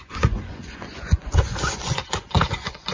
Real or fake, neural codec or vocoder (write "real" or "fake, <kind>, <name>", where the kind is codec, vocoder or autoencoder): fake, vocoder, Vocos